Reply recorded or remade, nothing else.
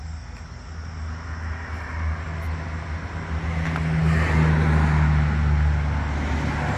recorded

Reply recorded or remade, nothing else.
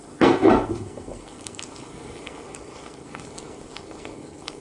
remade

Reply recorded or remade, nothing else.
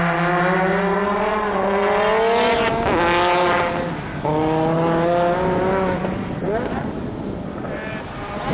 recorded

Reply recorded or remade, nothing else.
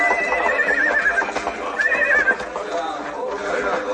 recorded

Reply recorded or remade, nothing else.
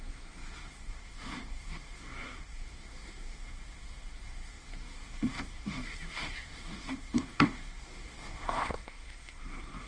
remade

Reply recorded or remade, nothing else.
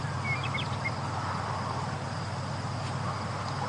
recorded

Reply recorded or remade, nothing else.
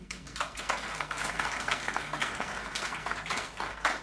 remade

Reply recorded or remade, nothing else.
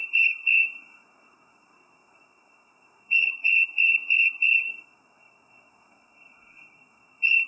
remade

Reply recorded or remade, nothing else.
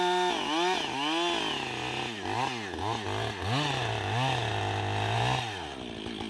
recorded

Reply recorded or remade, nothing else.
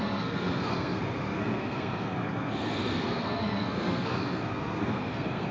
remade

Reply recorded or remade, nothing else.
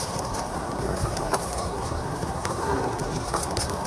remade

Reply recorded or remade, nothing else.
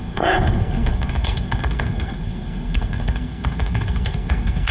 remade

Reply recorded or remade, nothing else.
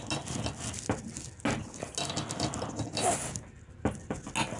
recorded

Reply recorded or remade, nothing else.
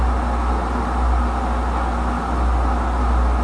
recorded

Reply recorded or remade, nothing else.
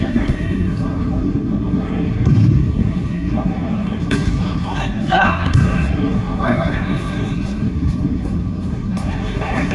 remade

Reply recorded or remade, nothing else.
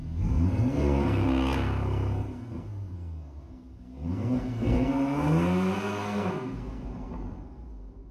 remade